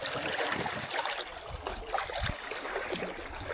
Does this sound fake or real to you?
real